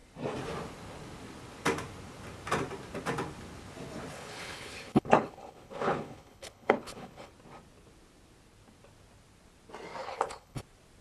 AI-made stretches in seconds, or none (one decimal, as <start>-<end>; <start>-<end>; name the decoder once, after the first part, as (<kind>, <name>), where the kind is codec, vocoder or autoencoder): 4.1-7.3 (codec, HILCodec); 10.0-10.6